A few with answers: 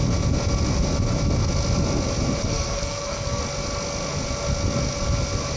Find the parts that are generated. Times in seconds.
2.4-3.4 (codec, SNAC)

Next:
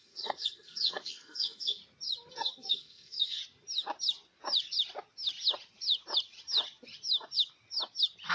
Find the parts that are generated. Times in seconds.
0.0-1.8 (codec, SNAC); 2.3-3.4

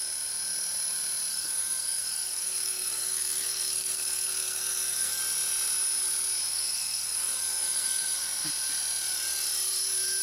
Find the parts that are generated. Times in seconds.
1.3-5.2 (codec, SNAC); 6.5-8.5